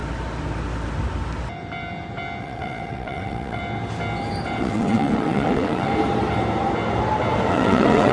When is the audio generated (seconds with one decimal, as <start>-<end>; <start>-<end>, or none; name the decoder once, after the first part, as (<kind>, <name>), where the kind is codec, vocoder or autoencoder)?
2.4-3.6 (vocoder, WaveNeXt); 4.6-5.9; 7.5-8.1